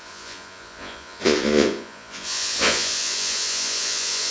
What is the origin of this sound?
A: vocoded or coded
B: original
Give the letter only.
A